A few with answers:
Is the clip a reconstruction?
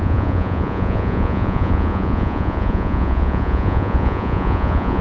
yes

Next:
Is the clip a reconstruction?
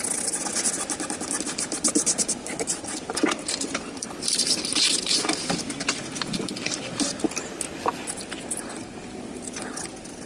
no